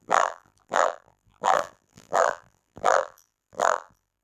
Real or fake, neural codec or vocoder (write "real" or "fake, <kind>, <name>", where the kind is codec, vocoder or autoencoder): fake, vocoder, BigVGAN v2